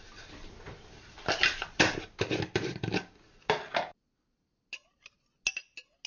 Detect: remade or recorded recorded